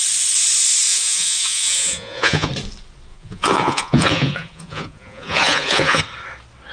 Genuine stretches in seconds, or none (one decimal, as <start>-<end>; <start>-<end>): 0.0-0.9; 2.5-3.1; 6.0-6.7